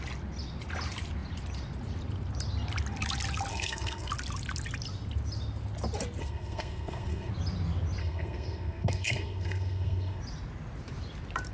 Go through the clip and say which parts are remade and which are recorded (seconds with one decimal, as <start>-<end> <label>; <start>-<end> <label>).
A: 0.0-3.5 recorded; 3.5-4.1 remade; 4.1-6.2 recorded; 6.2-7.3 remade; 7.3-8.0 recorded; 8.0-10.2 remade; 10.2-11.5 recorded